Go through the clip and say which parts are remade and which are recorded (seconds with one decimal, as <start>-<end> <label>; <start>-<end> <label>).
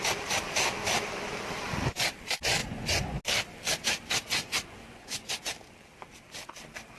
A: 0.0-2.6 recorded; 2.6-3.2 remade; 3.2-4.4 recorded; 4.4-5.4 remade; 5.4-7.0 recorded